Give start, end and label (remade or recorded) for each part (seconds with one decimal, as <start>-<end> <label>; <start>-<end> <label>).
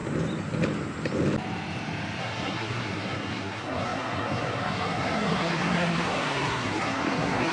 0.0-2.2 recorded; 2.2-7.5 remade